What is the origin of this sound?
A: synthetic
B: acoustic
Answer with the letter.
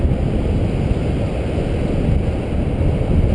B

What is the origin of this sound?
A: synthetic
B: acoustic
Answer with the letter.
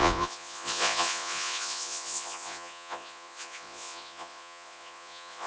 A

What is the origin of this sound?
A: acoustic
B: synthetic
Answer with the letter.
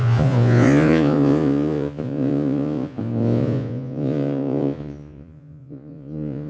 B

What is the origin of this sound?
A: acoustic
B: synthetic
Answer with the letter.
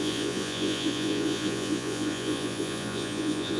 B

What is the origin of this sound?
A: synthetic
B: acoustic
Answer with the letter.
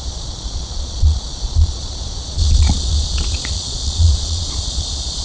A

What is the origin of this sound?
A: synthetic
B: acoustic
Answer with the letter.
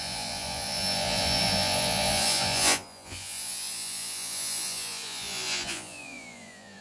A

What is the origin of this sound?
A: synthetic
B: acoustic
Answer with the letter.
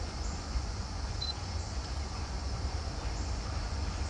A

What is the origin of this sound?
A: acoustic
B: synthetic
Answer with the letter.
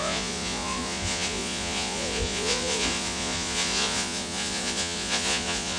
B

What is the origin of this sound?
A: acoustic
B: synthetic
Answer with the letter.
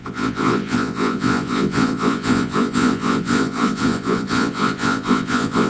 B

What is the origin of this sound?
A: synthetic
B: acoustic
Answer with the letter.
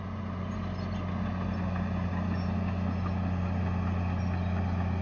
B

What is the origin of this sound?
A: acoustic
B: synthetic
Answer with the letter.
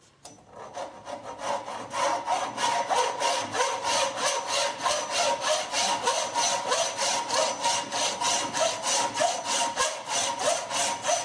A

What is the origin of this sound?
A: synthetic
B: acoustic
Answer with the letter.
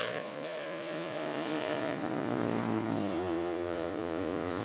A